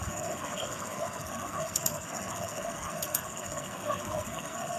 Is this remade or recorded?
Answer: remade